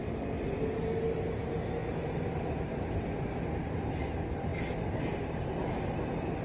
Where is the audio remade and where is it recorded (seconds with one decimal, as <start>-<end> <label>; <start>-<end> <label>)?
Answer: 0.0-6.4 recorded